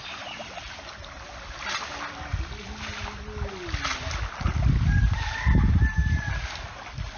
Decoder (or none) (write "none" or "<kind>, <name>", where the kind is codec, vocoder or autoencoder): none